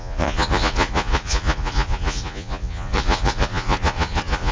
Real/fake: fake